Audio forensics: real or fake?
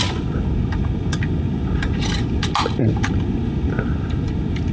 real